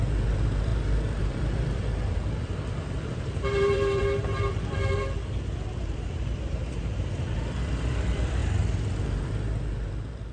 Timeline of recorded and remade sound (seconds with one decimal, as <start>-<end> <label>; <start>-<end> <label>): 0.0-8.4 remade; 8.4-9.0 recorded; 9.0-10.3 remade